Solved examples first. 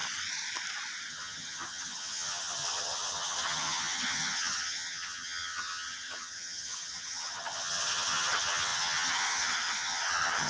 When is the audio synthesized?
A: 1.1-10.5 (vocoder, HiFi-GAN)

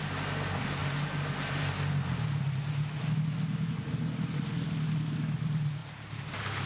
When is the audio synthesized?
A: none

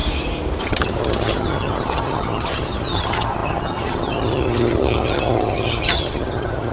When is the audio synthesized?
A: 0.6-6.7 (vocoder, HiFi-GAN)

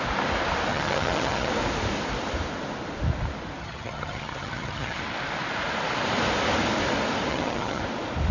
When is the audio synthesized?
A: 0.7-1.5 (vocoder, HiFi-GAN); 3.6-5.0; 7.3-7.8

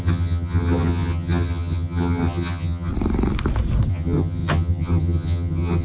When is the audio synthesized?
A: 0.0-2.9 (vocoder, HiFi-GAN); 3.9-5.8

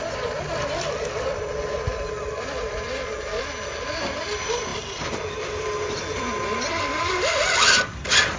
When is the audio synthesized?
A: none